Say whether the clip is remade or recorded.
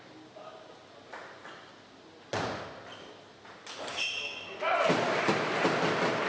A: recorded